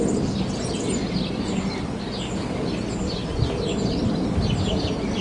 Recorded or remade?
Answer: recorded